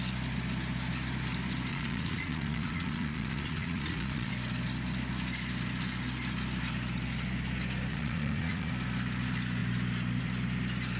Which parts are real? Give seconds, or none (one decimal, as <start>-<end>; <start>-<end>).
0.0-1.7; 4.3-7.9; 8.7-11.0